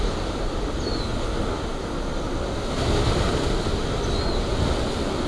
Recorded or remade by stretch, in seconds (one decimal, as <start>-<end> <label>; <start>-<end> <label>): 0.0-5.3 recorded